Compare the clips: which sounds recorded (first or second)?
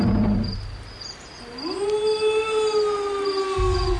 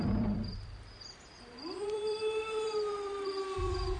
first